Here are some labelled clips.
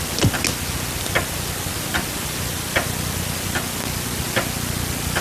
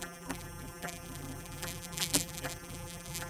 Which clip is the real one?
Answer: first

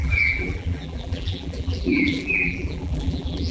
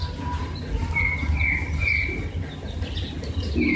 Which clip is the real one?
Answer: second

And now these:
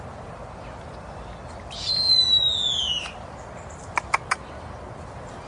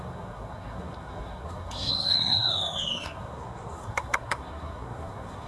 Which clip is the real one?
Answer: first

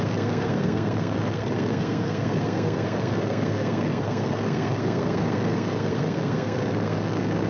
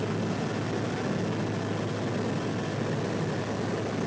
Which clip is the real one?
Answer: second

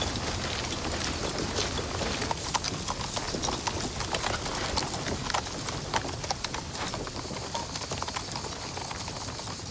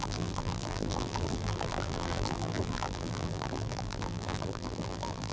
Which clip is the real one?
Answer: first